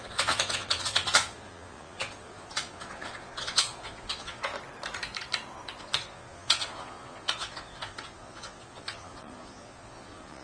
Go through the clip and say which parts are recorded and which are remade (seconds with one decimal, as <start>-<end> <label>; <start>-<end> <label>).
0.0-4.5 remade; 4.5-5.8 recorded; 5.8-10.4 remade